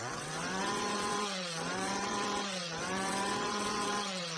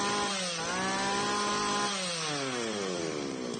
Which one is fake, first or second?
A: first